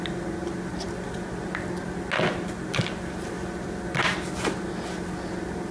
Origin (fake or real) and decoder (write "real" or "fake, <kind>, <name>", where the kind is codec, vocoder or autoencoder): real